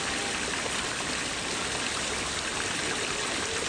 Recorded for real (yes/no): yes